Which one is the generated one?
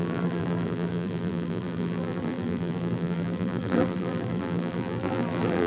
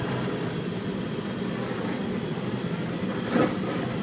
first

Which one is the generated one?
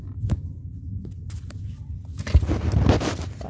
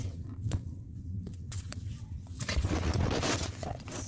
second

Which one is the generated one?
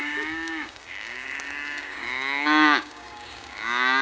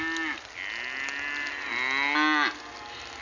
first